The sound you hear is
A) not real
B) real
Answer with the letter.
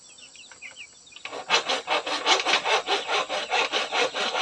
B